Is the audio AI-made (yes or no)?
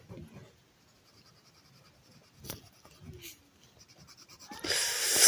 no